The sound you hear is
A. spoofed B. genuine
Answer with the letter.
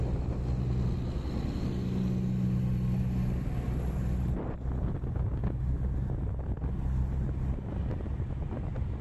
B